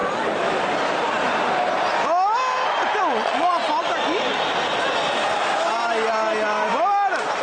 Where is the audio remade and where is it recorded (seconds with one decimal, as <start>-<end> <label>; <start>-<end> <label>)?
0.0-3.0 recorded; 3.0-3.6 remade; 3.6-7.4 recorded